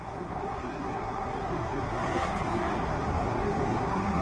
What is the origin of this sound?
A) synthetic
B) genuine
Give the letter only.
A